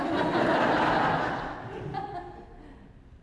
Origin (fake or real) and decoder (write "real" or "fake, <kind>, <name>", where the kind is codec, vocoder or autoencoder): real